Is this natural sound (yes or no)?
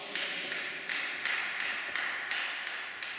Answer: yes